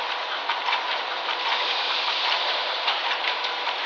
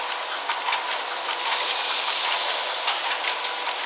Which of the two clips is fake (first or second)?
first